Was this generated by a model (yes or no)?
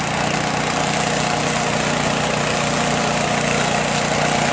no